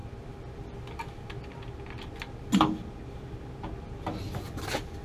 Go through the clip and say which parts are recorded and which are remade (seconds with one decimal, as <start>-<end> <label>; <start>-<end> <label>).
0.0-5.0 recorded